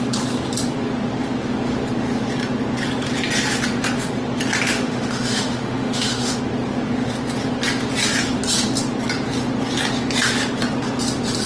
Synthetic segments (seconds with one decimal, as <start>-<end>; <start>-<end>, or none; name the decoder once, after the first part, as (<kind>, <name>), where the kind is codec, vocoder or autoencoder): 4.7-6.4 (autoencoder, DAC-VAE)